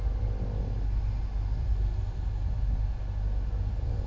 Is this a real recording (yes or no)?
yes